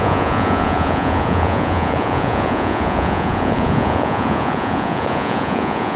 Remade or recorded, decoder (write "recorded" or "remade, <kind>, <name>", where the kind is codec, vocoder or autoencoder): remade, vocoder, Vocos